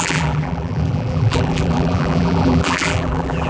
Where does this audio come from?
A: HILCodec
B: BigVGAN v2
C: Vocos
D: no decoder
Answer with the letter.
B